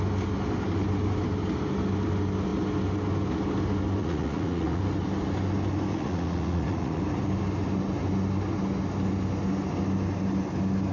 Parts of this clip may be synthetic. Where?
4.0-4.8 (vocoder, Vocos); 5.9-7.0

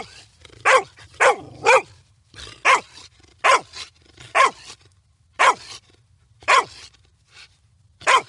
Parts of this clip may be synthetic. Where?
none

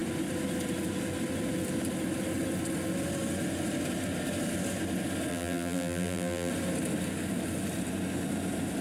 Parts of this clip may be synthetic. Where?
5.3-6.5 (vocoder, BigVGAN v2)

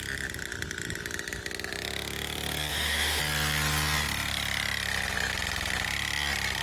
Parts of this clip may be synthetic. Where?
2.7-3.2 (autoencoder, DAC-VAE)

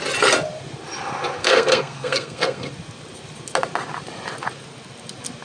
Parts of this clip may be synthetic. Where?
1.4-2.7 (codec, SNAC)

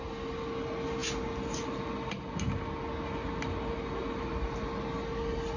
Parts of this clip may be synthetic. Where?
none

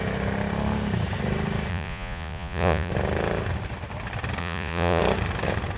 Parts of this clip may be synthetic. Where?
1.7-2.9 (vocoder, Vocos); 4.4-5.0

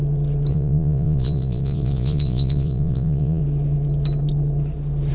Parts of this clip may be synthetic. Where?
0.5-3.4 (vocoder, Vocos)